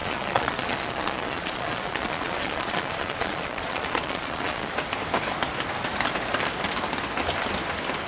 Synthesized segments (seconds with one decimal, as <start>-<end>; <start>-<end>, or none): 0.0-4.7

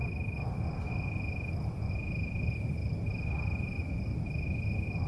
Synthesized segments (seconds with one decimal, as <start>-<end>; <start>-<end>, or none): none

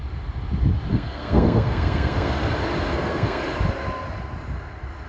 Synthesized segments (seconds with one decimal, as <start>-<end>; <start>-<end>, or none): 0.9-2.5; 2.9-3.4

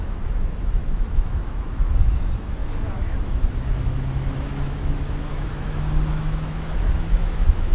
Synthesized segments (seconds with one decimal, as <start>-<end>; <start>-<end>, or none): 0.0-7.7

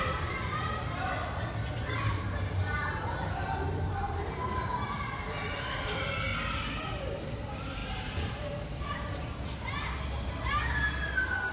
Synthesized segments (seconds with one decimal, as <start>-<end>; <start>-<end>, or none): 0.0-6.3; 7.0-10.7

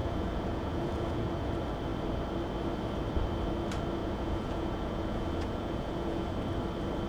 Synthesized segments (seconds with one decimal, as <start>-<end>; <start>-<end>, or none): 0.0-1.5; 4.0-6.3

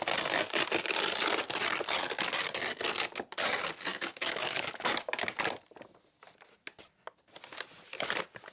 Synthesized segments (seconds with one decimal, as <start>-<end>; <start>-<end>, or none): 3.9-4.9